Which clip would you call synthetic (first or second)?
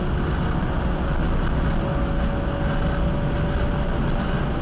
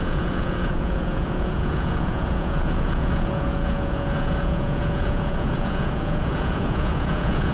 second